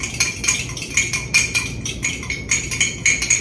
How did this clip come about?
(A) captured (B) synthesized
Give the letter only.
A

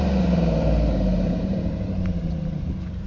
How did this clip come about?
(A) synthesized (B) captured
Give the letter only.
A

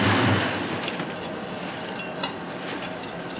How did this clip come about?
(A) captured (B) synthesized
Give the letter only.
A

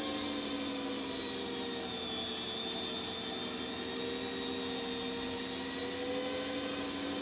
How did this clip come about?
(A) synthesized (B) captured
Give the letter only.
B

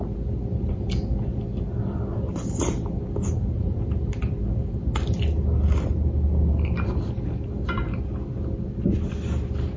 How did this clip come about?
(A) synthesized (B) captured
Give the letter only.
B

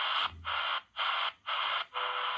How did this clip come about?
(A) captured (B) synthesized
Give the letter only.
A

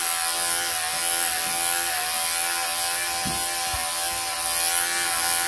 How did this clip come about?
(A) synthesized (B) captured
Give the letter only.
B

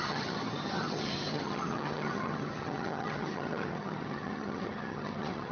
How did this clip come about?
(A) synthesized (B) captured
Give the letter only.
A